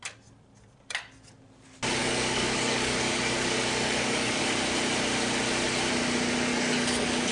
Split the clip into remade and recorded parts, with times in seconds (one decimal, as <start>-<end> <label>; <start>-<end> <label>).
0.0-2.0 recorded; 2.0-4.4 remade; 4.4-6.5 recorded; 6.5-7.3 remade